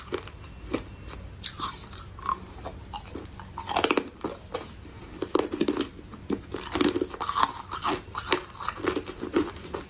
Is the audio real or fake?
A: real